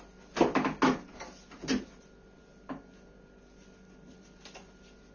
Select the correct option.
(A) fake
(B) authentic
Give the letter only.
B